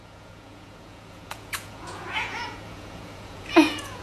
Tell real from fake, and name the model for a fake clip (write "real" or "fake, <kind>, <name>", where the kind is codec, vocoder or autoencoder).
fake, vocoder, Vocos